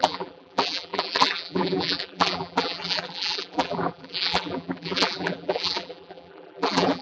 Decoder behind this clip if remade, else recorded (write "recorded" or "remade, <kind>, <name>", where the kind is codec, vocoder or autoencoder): remade, vocoder, BigVGAN v2